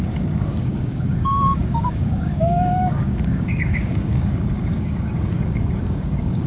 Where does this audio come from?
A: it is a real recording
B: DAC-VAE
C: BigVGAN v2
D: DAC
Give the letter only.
D